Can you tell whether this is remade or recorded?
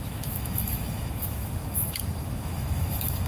remade